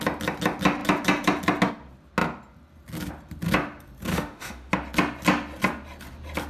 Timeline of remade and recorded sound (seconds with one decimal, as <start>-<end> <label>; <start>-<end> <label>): 0.0-4.1 recorded; 4.1-4.7 remade; 4.7-6.5 recorded